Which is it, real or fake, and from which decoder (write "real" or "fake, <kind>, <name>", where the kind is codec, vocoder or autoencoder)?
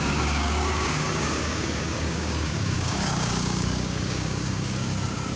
fake, codec, DAC